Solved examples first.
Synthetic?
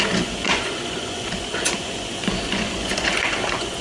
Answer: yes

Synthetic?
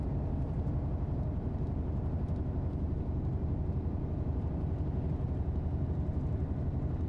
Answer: no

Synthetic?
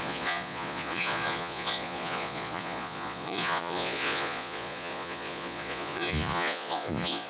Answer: yes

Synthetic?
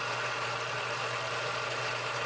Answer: no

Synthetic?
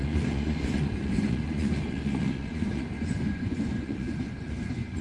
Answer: yes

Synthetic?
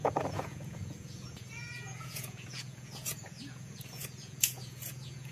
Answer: yes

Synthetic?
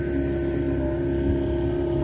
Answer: no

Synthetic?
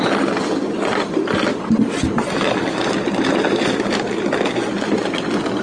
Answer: no